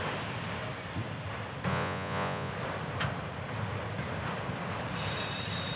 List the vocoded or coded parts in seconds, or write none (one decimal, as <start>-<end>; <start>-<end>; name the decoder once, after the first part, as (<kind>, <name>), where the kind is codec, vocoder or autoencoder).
1.7-2.5 (vocoder, Vocos)